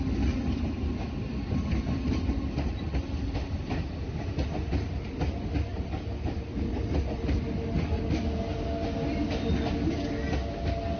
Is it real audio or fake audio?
real